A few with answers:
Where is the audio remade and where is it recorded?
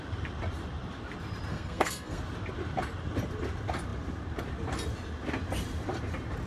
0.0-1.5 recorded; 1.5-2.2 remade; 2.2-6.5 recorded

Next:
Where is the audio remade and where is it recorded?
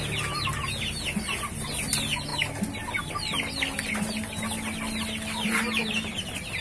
0.0-6.6 recorded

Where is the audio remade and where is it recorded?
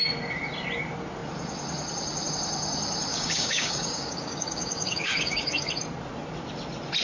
0.0-3.1 recorded; 3.1-5.7 remade; 5.7-7.0 recorded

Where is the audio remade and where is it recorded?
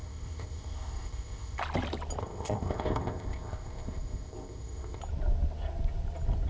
0.0-1.6 remade; 1.6-2.2 recorded; 2.2-5.0 remade; 5.0-6.5 recorded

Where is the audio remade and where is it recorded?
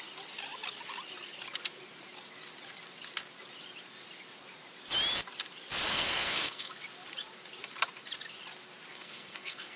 0.0-5.9 recorded; 5.9-6.7 remade; 6.7-8.9 recorded; 8.9-9.8 remade